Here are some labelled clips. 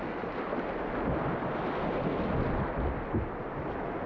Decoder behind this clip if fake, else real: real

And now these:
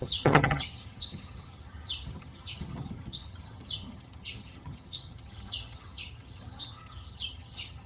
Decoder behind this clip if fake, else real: fake, vocoder, HiFi-GAN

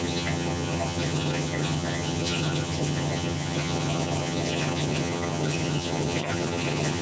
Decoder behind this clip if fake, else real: fake, vocoder, HiFi-GAN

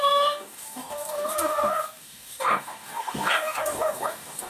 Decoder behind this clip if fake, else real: fake, codec, DAC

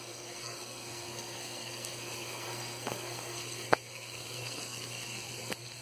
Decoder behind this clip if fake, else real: fake, codec, SNAC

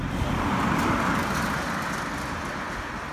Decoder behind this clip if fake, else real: fake, vocoder, BigVGAN v2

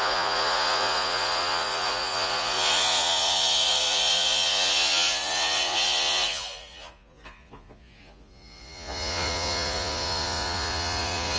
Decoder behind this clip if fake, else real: fake, vocoder, Vocos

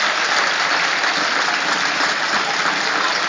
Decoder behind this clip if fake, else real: real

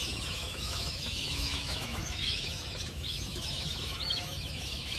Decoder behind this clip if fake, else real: fake, autoencoder, DAC-VAE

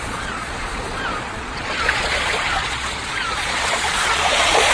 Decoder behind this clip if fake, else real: fake, vocoder, Vocos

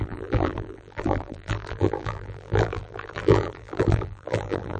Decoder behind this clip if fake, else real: fake, vocoder, BigVGAN v2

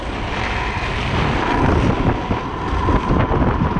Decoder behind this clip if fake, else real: real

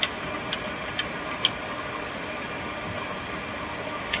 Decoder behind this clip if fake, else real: real